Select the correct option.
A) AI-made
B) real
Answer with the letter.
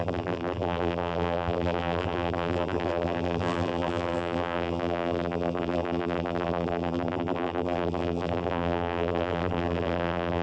A